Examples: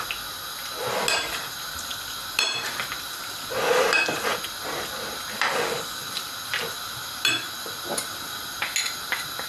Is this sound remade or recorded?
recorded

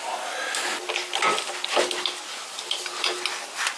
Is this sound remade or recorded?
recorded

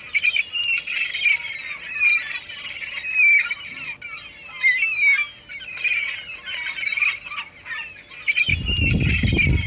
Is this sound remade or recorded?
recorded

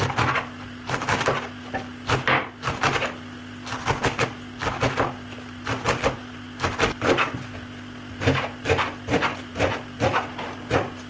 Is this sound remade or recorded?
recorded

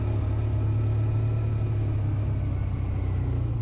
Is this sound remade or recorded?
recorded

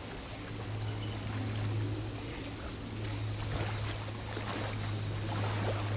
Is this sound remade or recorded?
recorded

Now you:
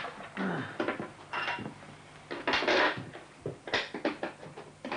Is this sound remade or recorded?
recorded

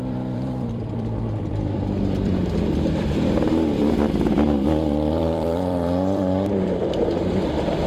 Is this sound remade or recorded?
remade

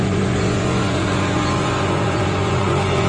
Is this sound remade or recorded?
remade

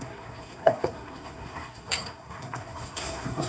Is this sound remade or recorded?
remade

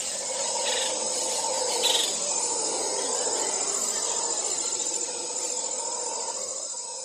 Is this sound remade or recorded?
recorded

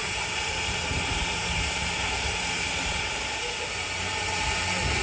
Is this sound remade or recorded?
remade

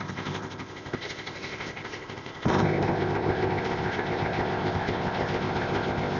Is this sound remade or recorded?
remade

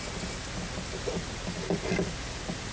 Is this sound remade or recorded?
recorded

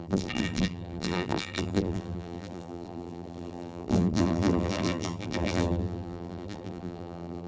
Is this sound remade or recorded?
remade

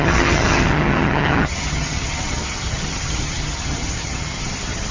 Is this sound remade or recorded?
remade